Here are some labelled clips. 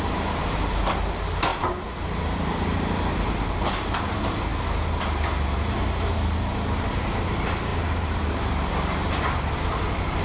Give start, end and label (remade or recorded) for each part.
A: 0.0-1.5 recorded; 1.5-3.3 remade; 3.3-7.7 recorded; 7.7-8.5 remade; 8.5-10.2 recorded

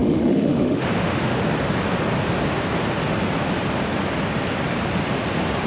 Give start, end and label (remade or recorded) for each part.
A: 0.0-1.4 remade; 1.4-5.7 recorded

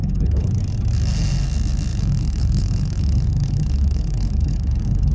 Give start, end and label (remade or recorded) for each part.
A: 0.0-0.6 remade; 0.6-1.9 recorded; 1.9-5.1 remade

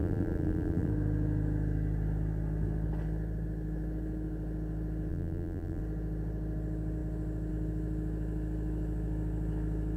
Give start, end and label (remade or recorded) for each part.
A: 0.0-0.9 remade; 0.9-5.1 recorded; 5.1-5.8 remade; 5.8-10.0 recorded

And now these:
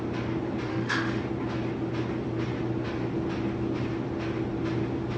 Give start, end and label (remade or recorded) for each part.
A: 0.0-0.7 recorded; 0.7-1.2 remade; 1.2-5.2 recorded

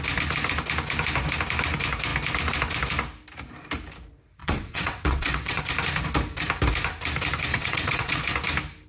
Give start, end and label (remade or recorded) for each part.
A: 0.0-4.4 recorded; 4.4-5.6 remade; 5.6-7.5 recorded; 7.5-8.2 remade; 8.2-8.9 recorded